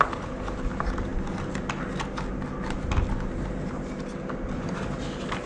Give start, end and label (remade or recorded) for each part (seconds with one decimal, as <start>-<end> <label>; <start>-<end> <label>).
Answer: 0.0-5.5 recorded

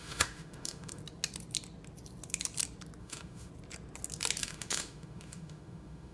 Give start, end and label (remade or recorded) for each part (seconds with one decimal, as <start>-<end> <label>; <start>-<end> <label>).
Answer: 0.0-1.0 remade; 1.0-3.0 recorded; 3.0-3.5 remade; 3.5-4.4 recorded; 4.4-6.1 remade

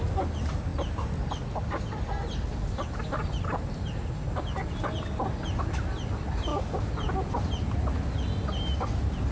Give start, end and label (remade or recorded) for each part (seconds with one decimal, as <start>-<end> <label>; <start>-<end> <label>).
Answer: 0.0-9.3 recorded

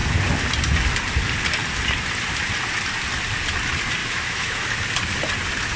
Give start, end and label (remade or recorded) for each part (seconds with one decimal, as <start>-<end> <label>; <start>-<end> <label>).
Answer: 0.0-4.0 recorded; 4.0-4.7 remade; 4.7-5.8 recorded

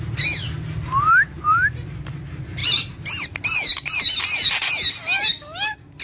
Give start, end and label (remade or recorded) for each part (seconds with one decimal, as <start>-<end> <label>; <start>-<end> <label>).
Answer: 0.0-6.0 recorded

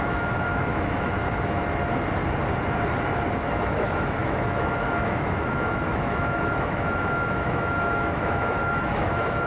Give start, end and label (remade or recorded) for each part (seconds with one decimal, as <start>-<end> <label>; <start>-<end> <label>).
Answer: 0.0-1.2 remade; 1.2-3.5 recorded; 3.5-9.5 remade

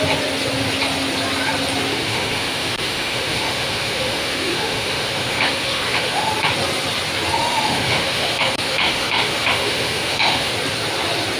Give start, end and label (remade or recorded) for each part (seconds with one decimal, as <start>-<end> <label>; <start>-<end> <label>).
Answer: 0.0-1.9 recorded; 1.9-6.3 remade; 6.3-7.4 recorded; 7.4-10.5 remade; 10.5-11.4 recorded

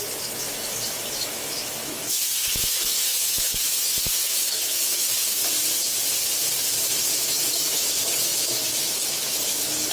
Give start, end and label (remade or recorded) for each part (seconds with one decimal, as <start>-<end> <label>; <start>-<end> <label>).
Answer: 0.0-5.4 remade; 5.4-7.0 recorded; 7.0-9.9 remade